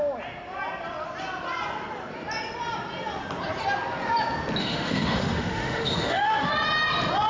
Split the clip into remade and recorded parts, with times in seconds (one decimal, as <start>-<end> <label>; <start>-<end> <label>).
0.0-4.6 recorded; 4.6-6.5 remade; 6.5-7.3 recorded